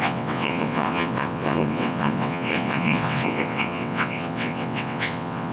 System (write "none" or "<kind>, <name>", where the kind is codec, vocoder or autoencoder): vocoder, WaveNeXt